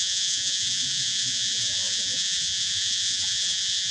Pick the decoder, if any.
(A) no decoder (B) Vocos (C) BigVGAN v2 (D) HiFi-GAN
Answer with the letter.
B